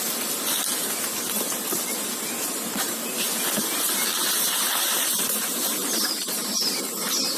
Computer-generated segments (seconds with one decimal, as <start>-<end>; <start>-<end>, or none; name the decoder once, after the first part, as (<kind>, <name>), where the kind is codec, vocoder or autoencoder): 5.8-6.6 (vocoder, BigVGAN v2)